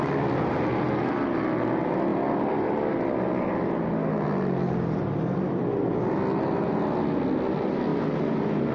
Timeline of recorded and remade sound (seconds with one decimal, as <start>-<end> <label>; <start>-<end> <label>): 0.0-8.7 recorded

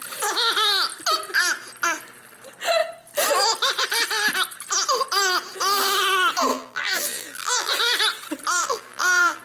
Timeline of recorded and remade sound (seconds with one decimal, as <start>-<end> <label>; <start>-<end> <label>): 0.0-6.5 recorded; 6.5-7.7 remade; 7.7-8.6 recorded; 8.6-9.4 remade

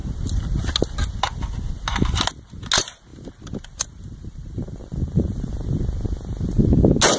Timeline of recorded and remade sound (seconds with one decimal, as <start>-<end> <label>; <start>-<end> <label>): 0.0-3.1 recorded; 3.1-5.5 remade; 5.5-7.2 recorded